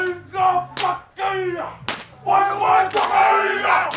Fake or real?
real